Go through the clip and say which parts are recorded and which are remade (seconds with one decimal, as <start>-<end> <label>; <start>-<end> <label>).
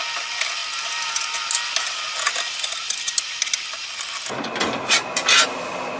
0.0-6.0 recorded